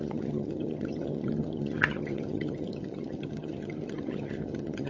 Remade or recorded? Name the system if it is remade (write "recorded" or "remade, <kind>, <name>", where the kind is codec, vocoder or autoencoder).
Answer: remade, vocoder, HiFi-GAN